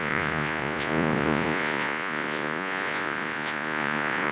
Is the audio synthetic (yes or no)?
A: yes